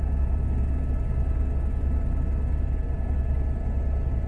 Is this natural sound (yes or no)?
yes